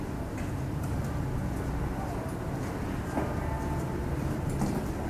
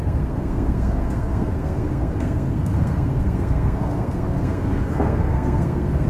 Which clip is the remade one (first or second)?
second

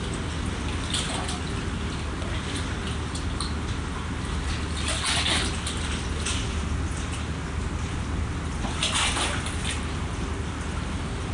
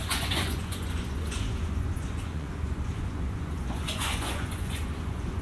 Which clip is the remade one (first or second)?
second